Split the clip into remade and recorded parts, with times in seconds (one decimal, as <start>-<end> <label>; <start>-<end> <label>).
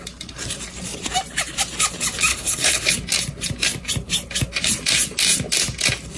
0.0-2.3 recorded; 2.3-2.9 remade; 2.9-6.2 recorded